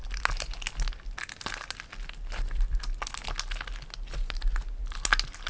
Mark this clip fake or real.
real